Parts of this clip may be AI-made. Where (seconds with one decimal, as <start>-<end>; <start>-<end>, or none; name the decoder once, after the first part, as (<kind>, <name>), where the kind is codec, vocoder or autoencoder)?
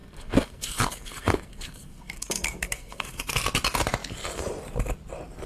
0.0-3.3 (codec, SNAC)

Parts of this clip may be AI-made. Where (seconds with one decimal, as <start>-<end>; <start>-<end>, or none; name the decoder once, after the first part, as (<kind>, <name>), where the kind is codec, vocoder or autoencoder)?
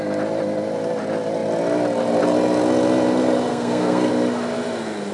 3.5-4.1 (codec, SNAC)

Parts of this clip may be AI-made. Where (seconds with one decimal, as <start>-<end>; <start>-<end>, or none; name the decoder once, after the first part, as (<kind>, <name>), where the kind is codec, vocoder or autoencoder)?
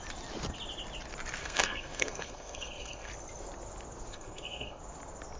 1.4-3.1 (codec, SNAC); 4.1-4.8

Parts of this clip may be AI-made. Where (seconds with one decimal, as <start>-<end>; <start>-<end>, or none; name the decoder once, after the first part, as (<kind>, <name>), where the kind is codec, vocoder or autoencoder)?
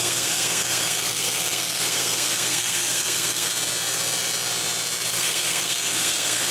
0.0-3.5 (codec, SNAC); 5.1-6.5